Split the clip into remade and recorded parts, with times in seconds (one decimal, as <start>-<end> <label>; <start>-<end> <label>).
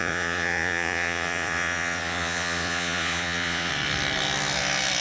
0.0-3.7 remade; 3.7-5.0 recorded